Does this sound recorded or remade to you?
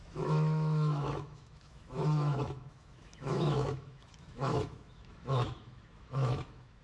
remade